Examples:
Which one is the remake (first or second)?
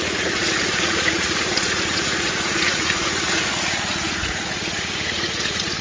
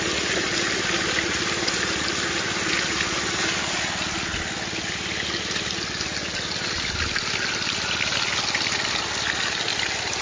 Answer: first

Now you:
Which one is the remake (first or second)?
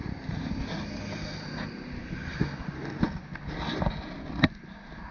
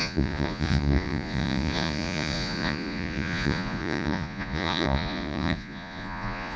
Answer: second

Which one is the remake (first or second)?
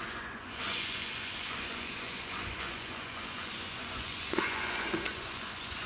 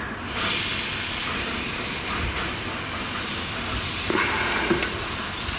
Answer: first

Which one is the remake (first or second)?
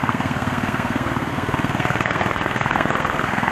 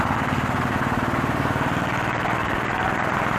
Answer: first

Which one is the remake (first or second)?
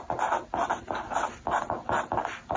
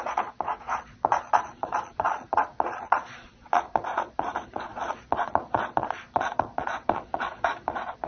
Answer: second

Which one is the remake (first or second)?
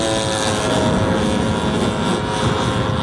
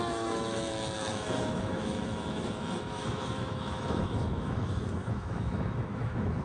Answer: second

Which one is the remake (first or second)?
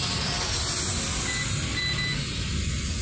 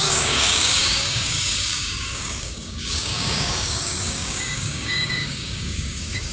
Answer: second